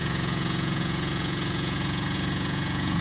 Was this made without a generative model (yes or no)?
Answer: no